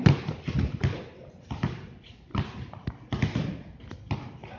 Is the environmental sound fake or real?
real